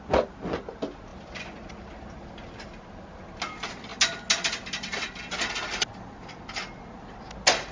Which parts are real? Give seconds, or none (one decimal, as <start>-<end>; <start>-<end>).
0.0-7.7